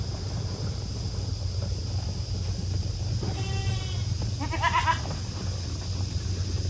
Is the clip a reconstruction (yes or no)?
no